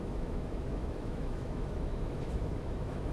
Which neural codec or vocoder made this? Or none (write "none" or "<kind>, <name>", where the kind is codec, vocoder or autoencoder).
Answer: autoencoder, DAC-VAE